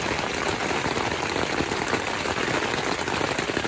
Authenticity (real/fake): real